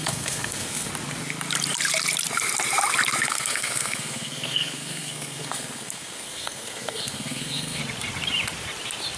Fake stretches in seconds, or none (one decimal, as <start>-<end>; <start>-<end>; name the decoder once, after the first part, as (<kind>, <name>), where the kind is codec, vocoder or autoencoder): 0.0-0.9 (codec, SNAC); 3.3-7.8

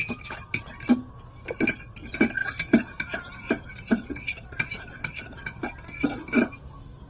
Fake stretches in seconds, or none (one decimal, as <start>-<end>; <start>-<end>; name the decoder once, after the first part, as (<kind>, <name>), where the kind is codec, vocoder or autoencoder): none

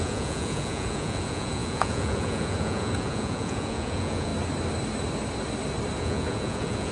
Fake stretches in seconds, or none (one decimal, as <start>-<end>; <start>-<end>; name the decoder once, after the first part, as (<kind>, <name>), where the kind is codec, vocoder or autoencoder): 0.0-4.3 (vocoder, Vocos); 6.0-6.9